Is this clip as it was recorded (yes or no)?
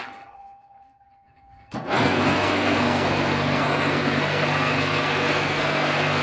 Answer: no